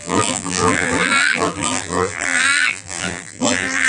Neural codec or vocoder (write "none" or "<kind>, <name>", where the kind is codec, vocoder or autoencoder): vocoder, BigVGAN v2